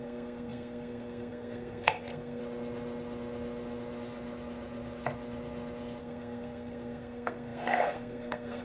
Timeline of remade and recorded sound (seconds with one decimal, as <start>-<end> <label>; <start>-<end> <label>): 0.0-2.4 remade; 2.4-6.0 recorded; 6.0-8.6 remade